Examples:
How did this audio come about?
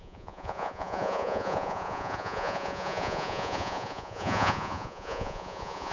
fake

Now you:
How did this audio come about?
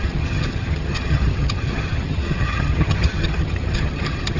fake